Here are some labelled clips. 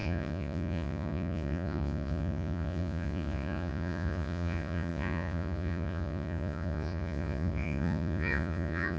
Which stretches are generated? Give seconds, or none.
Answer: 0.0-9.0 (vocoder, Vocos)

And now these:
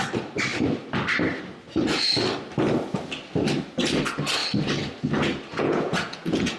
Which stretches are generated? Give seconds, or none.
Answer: 5.5-6.6 (vocoder, Vocos)

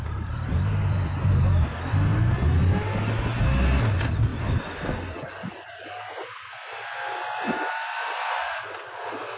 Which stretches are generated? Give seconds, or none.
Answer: none

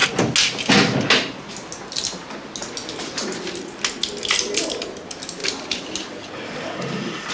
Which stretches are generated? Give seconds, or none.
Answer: none